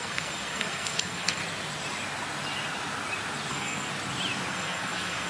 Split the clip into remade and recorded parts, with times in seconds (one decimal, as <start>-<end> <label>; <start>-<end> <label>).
0.0-1.4 remade; 1.4-3.5 recorded; 3.5-3.9 remade; 3.9-4.5 recorded; 4.5-5.3 remade